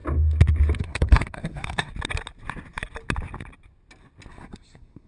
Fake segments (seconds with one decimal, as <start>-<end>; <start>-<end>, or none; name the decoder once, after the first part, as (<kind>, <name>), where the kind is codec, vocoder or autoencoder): 0.8-1.9 (codec, SNAC); 4.3-5.1